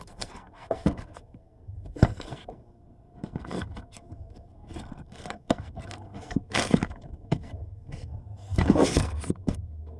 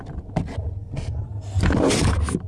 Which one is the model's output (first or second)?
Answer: first